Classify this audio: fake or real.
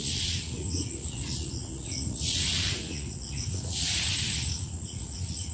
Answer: fake